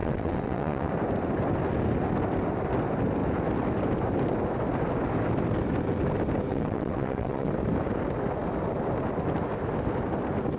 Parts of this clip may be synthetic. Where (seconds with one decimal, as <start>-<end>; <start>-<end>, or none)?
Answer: 0.0-0.9; 6.5-7.5